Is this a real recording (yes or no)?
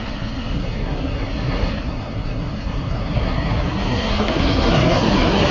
no